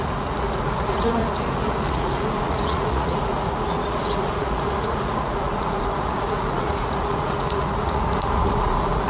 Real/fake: fake